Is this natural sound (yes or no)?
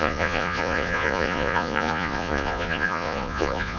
no